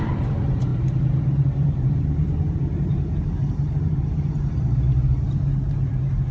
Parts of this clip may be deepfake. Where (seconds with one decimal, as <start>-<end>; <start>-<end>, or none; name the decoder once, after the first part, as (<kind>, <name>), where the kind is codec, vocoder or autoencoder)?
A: 0.0-6.3 (vocoder, BigVGAN v2)